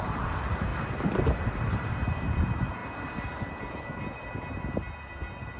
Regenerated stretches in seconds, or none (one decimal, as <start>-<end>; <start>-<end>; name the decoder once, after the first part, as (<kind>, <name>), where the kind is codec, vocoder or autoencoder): 0.0-2.8 (vocoder, BigVGAN v2)